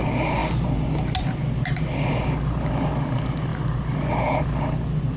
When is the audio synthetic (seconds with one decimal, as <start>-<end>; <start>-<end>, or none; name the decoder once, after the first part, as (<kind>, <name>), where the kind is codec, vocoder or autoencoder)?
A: none